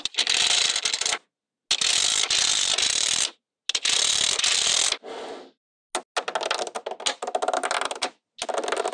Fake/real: real